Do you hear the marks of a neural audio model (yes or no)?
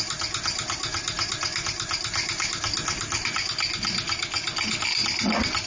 no